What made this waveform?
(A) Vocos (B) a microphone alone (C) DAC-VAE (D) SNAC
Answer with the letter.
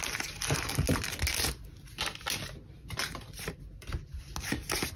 B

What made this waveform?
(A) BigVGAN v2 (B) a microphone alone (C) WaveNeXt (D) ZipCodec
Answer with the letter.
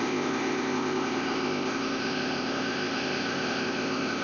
D